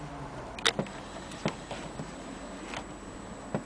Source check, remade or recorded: recorded